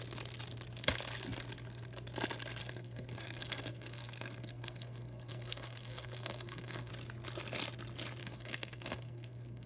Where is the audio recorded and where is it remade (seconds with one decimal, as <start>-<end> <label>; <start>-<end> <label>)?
0.0-2.6 recorded; 2.6-6.9 remade; 6.9-8.2 recorded; 8.2-9.7 remade